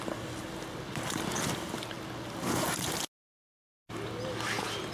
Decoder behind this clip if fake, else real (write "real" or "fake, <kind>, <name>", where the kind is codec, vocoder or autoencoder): real